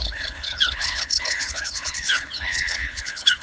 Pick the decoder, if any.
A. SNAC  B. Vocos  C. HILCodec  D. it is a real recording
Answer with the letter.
C